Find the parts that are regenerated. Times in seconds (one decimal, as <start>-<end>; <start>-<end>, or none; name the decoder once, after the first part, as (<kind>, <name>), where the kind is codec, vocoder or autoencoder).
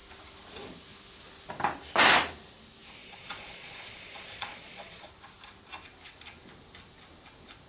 3.0-5.1 (vocoder, Vocos)